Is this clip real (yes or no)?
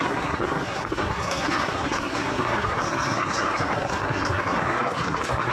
no